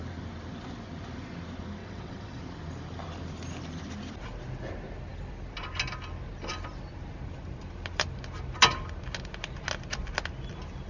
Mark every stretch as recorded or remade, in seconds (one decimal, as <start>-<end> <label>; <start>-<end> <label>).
0.0-1.8 recorded; 1.8-2.4 remade; 2.4-10.9 recorded